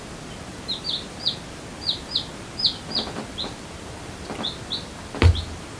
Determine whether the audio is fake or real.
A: real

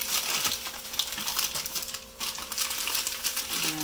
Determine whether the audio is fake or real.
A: real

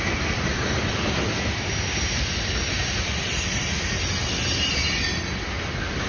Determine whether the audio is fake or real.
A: real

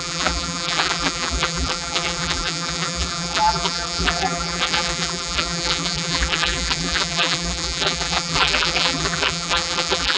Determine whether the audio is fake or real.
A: fake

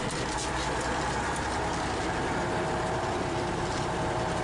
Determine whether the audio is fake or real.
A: fake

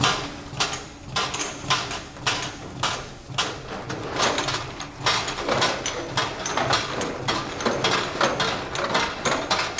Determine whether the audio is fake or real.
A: real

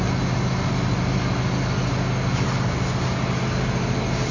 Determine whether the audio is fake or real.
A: real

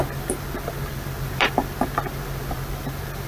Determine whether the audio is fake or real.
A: fake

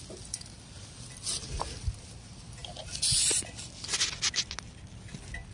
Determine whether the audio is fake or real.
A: real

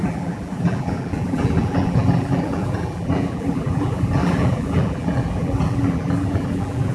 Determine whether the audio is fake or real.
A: fake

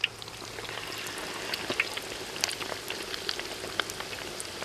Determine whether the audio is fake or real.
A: real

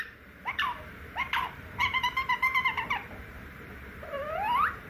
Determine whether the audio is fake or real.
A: fake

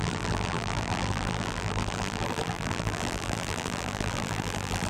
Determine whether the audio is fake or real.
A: fake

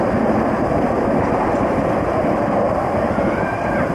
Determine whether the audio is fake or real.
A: fake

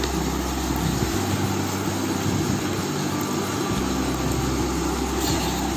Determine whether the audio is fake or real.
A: real